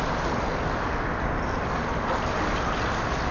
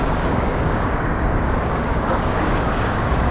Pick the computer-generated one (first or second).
second